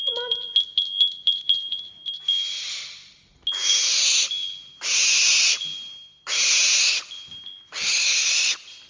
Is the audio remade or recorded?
recorded